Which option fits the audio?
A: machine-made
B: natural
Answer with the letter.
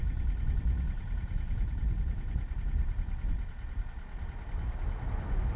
B